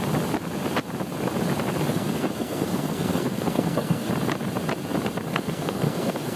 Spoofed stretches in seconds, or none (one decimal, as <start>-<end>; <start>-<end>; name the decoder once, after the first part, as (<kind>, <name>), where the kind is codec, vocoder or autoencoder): 1.9-4.1 (codec, SNAC); 5.3-6.4